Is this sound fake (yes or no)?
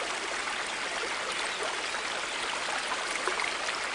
no